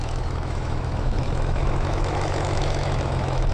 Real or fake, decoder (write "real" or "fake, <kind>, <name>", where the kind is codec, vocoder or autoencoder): fake, autoencoder, DAC-VAE